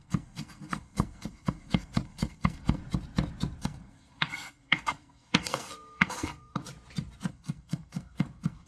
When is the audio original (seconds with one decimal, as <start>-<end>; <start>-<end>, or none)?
2.8-3.6; 6.6-7.3